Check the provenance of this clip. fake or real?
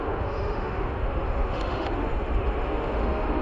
fake